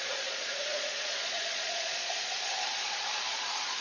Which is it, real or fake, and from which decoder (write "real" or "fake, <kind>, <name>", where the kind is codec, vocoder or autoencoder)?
fake, vocoder, Vocos